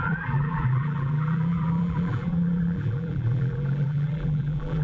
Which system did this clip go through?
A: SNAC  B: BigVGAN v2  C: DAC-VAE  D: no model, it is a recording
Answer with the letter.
B